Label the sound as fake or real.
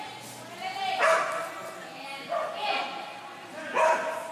real